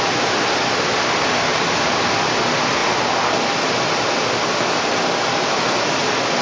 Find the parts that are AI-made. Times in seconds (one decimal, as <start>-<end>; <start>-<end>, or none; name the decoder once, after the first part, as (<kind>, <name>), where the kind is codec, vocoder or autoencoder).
none